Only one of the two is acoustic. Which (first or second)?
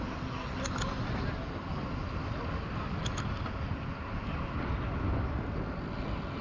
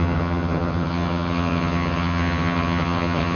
first